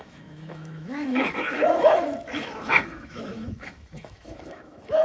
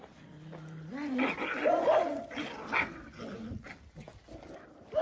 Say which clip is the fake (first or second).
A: first